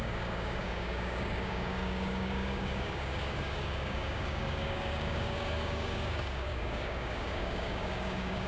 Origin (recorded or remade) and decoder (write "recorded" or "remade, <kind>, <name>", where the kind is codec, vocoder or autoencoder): remade, codec, DAC